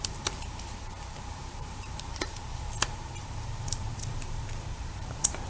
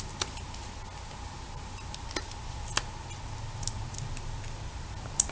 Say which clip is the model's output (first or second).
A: first